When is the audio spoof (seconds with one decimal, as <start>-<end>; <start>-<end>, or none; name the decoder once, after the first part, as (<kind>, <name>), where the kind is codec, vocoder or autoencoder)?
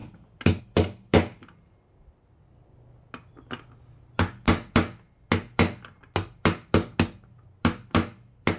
none